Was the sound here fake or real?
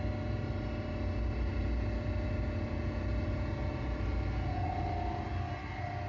real